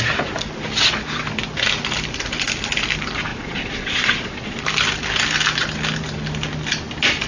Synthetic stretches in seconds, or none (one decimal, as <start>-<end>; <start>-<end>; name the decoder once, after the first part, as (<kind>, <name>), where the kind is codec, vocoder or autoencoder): 3.3-4.6 (vocoder, Vocos)